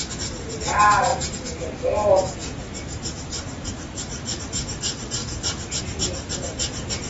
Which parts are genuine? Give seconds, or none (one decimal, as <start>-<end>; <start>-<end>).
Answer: 0.0-7.1